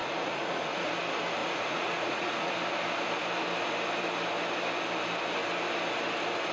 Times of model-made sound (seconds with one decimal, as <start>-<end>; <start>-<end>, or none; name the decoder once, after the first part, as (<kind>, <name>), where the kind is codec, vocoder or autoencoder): 0.0-0.9 (vocoder, Vocos); 1.4-2.5